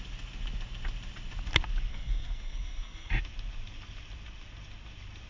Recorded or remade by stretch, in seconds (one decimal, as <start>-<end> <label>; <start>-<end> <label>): 0.0-1.9 recorded; 1.9-3.1 remade; 3.1-5.3 recorded